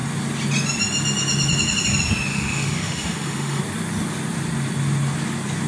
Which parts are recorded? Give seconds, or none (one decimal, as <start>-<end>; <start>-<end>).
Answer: 0.0-2.3; 3.6-5.7